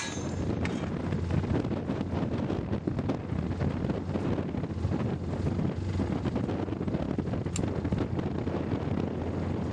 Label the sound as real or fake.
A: real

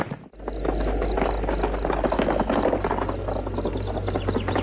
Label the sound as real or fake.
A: real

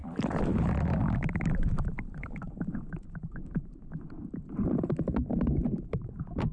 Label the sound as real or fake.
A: fake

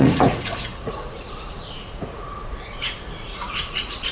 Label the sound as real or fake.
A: fake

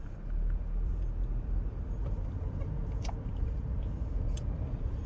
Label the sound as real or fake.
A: fake